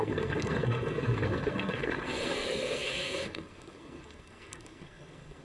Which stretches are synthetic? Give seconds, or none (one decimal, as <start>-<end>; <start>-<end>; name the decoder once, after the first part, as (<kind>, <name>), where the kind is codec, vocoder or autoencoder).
0.0-5.4 (codec, SNAC)